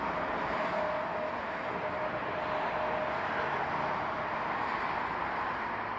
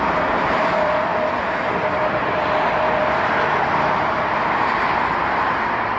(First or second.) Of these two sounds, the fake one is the second